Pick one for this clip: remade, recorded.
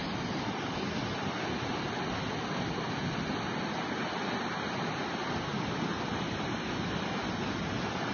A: recorded